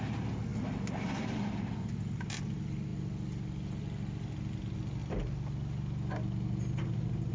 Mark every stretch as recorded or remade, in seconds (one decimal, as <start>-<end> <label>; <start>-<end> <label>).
0.0-7.3 recorded